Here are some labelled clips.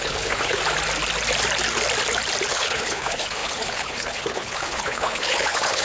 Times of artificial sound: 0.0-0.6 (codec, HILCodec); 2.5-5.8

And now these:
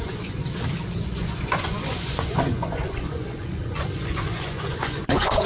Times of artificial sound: 0.0-0.4 (vocoder, Vocos); 0.9-5.5

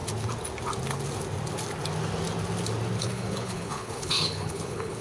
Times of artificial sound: 3.0-5.0 (codec, HILCodec)

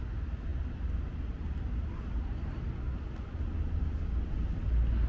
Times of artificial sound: none

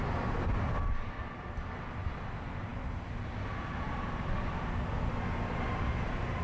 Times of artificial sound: none